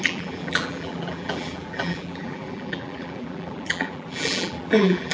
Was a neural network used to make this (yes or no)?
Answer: yes